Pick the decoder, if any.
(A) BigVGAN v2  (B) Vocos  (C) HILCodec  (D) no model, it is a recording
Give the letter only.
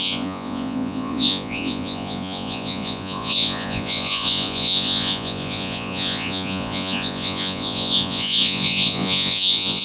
B